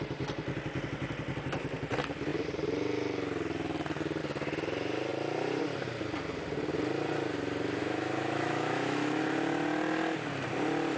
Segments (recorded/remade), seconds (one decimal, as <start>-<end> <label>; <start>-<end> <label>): 0.0-7.8 recorded; 7.8-9.2 remade; 9.2-11.0 recorded